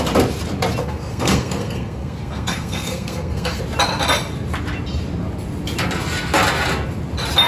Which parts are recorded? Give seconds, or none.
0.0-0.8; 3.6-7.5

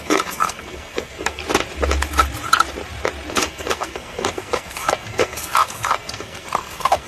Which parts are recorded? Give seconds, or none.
1.4-3.3

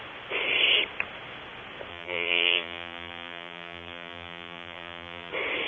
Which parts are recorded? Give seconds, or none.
0.0-1.9; 5.3-5.7

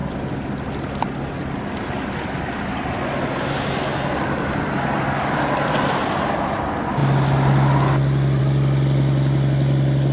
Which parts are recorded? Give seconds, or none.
0.0-10.1

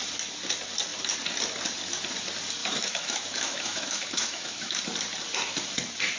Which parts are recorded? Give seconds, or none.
0.0-2.6; 4.8-6.2